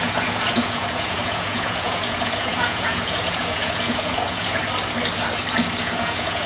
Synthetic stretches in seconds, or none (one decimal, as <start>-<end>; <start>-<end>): 0.0-4.6; 5.8-6.5

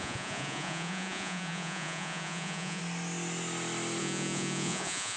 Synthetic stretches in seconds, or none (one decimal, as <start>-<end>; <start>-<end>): 0.0-2.8; 4.0-5.2

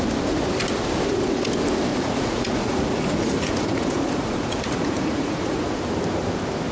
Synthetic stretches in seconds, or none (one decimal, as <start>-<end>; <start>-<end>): 1.9-5.8

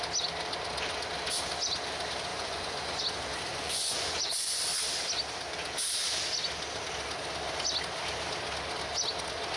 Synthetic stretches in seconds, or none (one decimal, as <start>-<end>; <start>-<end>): 2.3-3.0; 3.5-4.6

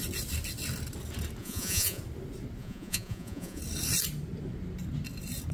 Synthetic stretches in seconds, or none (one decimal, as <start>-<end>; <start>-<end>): 1.4-2.0; 2.6-3.6